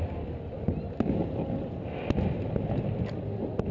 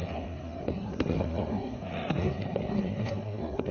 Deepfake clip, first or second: second